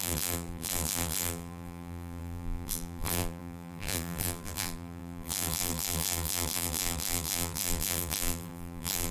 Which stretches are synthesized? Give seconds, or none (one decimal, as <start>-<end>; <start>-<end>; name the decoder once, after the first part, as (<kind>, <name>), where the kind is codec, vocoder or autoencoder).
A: 0.0-9.1 (vocoder, BigVGAN v2)